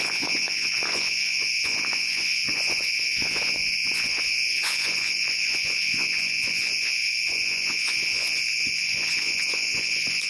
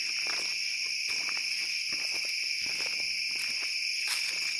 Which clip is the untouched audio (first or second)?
second